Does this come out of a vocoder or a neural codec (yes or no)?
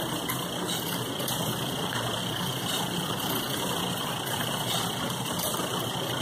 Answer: no